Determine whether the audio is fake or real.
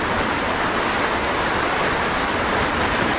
real